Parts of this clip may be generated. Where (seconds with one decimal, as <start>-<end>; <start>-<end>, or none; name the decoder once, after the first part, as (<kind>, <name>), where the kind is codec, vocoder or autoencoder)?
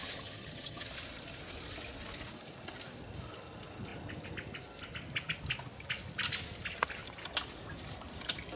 0.0-0.9 (vocoder, HiFi-GAN)